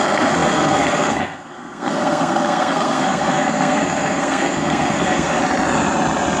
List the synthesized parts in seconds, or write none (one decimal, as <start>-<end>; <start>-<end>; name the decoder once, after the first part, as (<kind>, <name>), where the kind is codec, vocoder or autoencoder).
0.0-5.4 (codec, SNAC)